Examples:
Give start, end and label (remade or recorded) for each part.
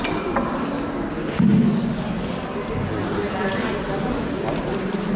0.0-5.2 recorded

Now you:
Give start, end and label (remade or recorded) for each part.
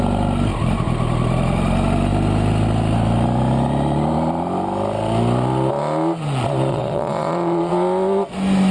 0.0-6.7 recorded; 6.7-7.7 remade; 7.7-8.7 recorded